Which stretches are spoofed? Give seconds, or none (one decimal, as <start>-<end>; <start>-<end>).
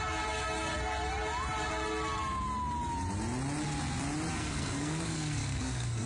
4.3-6.1